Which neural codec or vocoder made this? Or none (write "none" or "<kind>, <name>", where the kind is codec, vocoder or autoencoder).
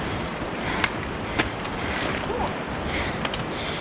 none